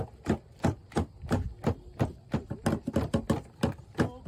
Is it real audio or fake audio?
real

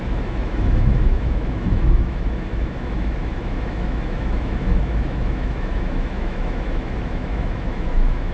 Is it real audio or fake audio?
fake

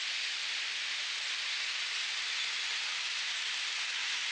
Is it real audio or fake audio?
real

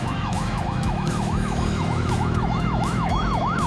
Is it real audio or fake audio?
fake